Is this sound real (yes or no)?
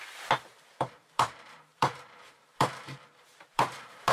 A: no